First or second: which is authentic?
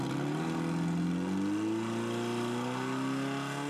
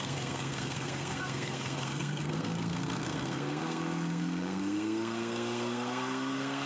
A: first